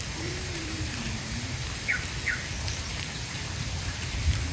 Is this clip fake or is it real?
fake